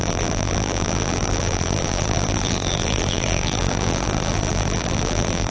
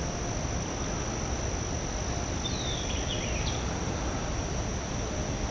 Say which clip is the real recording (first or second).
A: second